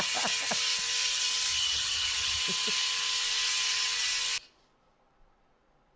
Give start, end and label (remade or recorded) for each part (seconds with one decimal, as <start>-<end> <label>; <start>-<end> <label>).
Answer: 0.0-1.5 recorded; 1.5-2.4 remade; 2.4-6.0 recorded